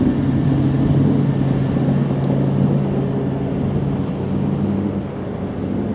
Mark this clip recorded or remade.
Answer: recorded